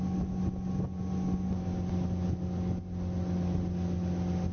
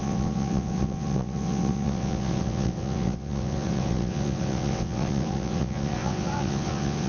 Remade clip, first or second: second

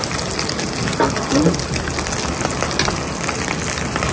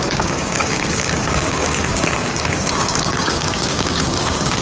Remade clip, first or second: second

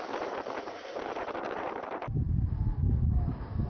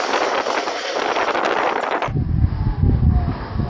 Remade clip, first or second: first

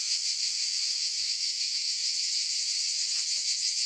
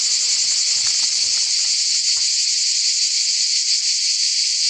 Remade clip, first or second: first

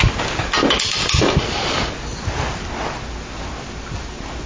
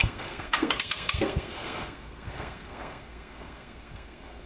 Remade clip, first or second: second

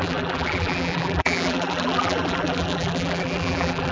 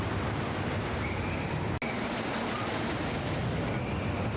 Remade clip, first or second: first